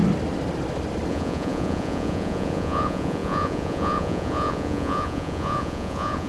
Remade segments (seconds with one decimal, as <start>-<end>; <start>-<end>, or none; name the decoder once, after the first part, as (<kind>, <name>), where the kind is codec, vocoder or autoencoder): 1.1-6.3 (vocoder, Vocos)

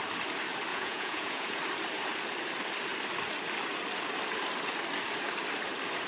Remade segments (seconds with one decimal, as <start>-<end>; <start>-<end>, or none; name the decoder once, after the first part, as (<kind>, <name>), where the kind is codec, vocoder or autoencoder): 0.7-1.6 (vocoder, Vocos)

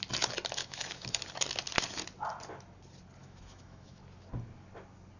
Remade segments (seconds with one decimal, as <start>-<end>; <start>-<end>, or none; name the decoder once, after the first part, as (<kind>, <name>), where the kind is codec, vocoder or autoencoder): 0.6-1.2 (autoencoder, DAC-VAE); 3.2-4.0

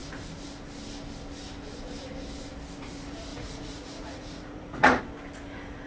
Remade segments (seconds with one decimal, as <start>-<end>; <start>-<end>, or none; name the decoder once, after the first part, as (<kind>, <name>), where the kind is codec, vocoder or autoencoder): 3.3-5.0 (vocoder, Vocos)